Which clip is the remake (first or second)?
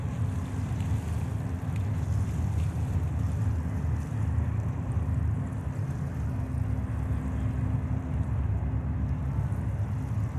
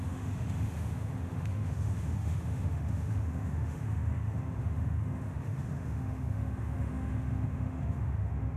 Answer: second